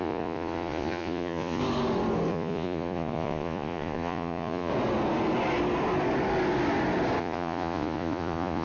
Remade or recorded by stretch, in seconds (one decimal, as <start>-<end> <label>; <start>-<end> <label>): 0.0-1.6 remade; 1.6-2.3 recorded; 2.3-4.7 remade; 4.7-7.2 recorded; 7.2-8.6 remade